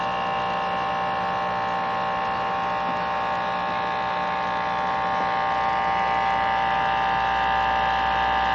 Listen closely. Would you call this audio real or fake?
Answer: real